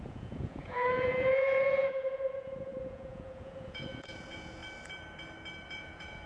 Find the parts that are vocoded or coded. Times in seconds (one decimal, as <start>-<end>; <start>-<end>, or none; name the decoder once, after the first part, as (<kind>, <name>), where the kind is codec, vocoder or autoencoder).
0.0-4.6 (vocoder, Vocos); 5.7-6.3